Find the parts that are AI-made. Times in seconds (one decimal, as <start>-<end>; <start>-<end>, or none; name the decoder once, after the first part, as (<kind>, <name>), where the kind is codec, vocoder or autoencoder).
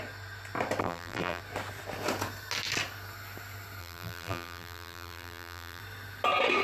0.8-1.4 (vocoder, BigVGAN v2); 3.8-5.8